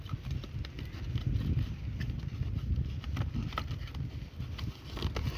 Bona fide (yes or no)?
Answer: yes